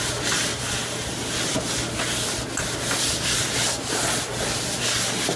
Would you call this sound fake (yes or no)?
no